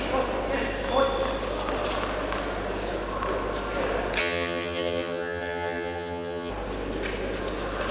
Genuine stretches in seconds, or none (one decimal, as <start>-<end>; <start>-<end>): 0.0-4.2; 6.5-7.9